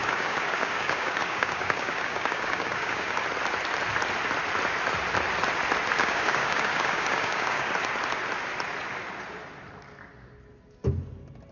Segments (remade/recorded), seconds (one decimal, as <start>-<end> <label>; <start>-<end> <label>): 0.0-3.2 remade; 3.2-5.9 recorded; 5.9-7.7 remade; 7.7-11.5 recorded